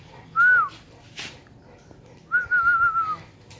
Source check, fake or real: real